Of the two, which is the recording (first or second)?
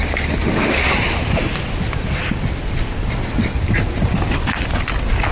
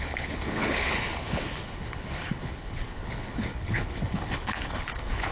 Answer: first